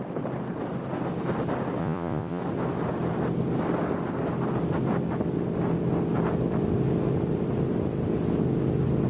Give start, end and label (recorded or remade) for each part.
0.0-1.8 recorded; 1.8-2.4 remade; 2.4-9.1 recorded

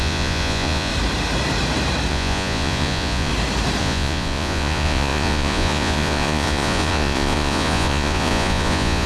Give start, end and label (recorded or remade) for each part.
0.0-0.9 remade; 0.9-2.1 recorded; 2.1-3.3 remade; 3.3-3.8 recorded; 3.8-9.1 remade

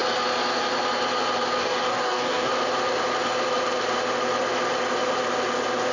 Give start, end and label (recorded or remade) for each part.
0.0-1.6 recorded; 1.6-2.5 remade; 2.5-5.9 recorded